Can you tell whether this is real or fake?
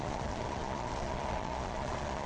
fake